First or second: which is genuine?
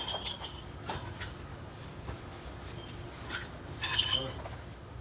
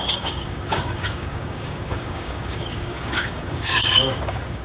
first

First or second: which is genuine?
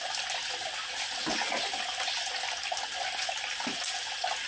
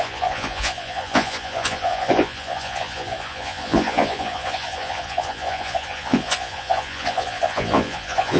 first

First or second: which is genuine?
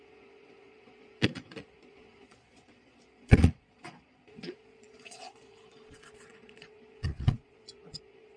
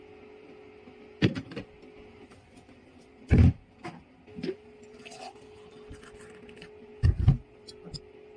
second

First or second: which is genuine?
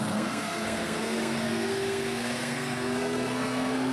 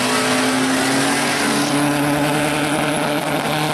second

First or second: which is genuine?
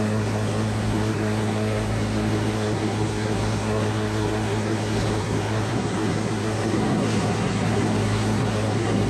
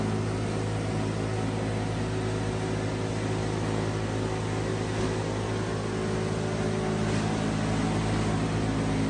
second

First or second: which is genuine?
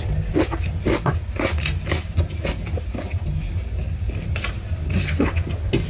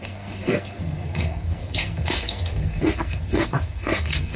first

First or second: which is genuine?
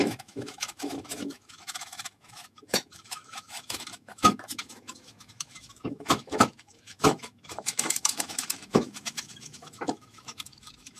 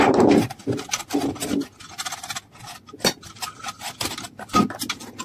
second